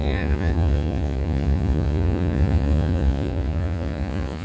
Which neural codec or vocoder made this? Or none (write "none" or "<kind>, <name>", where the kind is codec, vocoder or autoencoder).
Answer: vocoder, Vocos